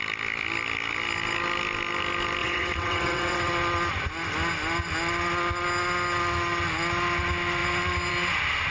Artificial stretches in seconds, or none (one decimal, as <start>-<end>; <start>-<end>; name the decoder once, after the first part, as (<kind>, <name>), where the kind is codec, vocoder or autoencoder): 2.4-3.5 (vocoder, WaveNeXt)